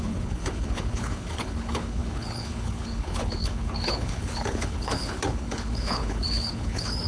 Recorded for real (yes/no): no